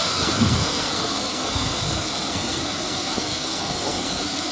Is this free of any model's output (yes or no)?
no